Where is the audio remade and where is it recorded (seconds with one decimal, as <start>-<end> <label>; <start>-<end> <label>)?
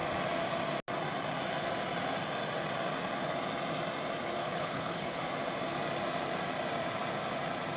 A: 0.0-4.4 recorded; 4.4-5.2 remade; 5.2-7.8 recorded